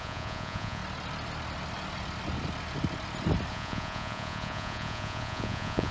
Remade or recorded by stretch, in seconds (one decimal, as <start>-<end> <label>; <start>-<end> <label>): 0.0-0.8 remade; 0.8-3.5 recorded; 3.5-5.9 remade